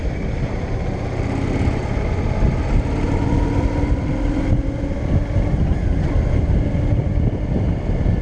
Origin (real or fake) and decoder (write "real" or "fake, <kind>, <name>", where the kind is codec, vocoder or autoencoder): real